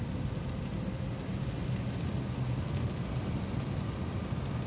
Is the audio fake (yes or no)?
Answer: no